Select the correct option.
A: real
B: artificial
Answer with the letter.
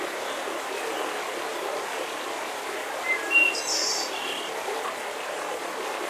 A